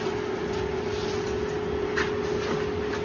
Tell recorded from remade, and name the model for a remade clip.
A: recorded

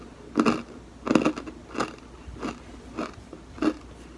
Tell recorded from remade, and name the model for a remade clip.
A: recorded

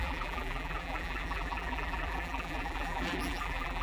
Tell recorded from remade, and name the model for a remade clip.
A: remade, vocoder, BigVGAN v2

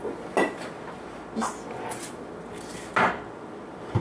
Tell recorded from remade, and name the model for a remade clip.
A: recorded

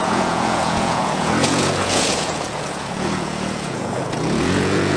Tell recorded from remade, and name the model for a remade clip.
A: remade, vocoder, Vocos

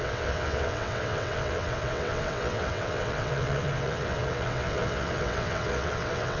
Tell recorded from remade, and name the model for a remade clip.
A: remade, vocoder, WaveNeXt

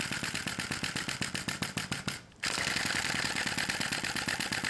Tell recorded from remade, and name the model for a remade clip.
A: recorded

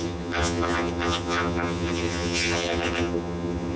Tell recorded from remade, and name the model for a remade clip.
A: remade, vocoder, HiFi-GAN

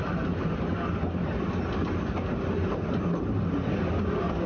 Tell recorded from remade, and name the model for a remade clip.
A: recorded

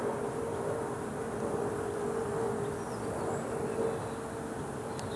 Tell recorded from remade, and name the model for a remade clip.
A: recorded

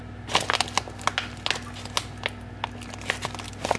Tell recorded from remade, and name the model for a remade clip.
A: recorded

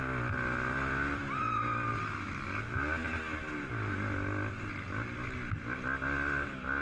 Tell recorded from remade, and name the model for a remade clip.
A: recorded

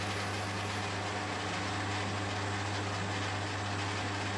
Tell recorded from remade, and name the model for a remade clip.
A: recorded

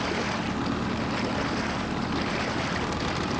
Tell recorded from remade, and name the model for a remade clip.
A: recorded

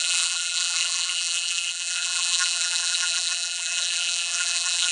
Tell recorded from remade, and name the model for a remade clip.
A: remade, vocoder, BigVGAN v2